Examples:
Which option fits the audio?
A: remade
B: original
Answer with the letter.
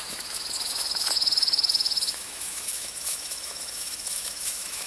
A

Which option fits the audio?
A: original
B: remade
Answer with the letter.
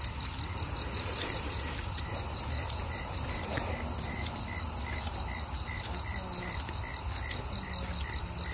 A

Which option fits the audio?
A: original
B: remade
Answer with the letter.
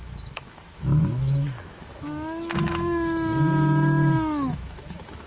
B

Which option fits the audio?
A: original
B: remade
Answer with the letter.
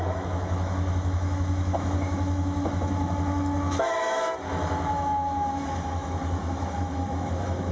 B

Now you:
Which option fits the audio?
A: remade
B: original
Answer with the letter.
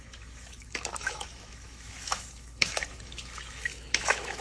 A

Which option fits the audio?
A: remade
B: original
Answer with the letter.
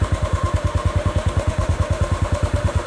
A